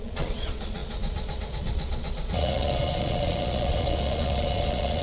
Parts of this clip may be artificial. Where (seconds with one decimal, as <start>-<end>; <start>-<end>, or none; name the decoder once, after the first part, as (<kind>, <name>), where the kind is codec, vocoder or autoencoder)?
0.0-5.0 (vocoder, Vocos)